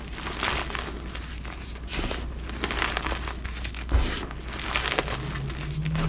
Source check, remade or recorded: recorded